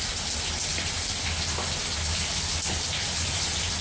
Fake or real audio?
real